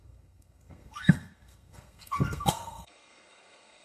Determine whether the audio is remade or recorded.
remade